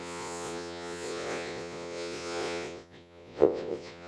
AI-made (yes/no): yes